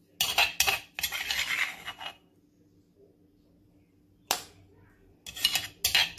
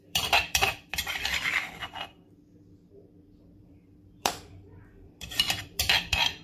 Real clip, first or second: first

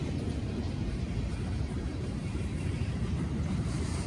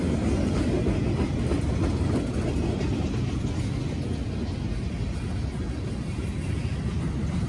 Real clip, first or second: second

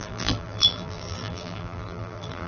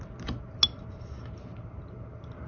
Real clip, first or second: second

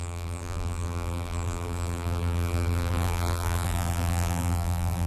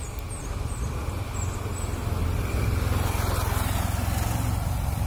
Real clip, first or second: second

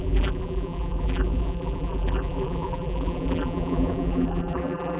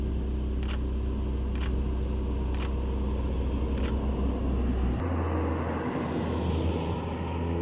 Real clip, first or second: second